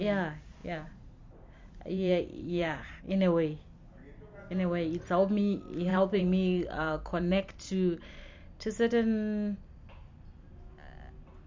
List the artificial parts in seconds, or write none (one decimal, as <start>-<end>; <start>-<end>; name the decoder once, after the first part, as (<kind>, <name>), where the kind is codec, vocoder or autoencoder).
0.6-3.0 (vocoder, BigVGAN v2); 5.9-7.6